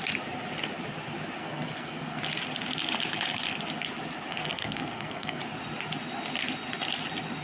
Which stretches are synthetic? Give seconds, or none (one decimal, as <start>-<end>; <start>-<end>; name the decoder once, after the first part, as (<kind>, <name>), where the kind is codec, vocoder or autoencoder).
1.4-2.2 (codec, SNAC); 4.3-5.4